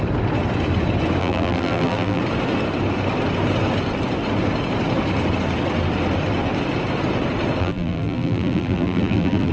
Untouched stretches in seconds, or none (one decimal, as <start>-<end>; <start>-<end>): 0.0-1.2; 2.2-7.6